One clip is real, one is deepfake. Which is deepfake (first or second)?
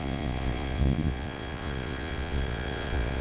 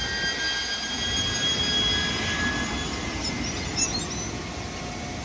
first